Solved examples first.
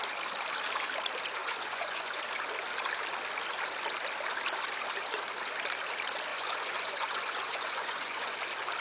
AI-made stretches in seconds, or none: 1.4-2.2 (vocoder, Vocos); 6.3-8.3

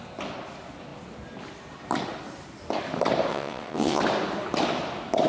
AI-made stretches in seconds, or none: 3.3-4.0 (vocoder, WaveNeXt)